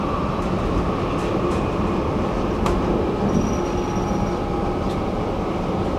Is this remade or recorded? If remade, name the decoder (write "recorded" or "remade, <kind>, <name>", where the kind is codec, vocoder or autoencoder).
recorded